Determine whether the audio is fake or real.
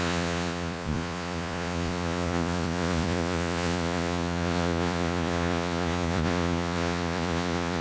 fake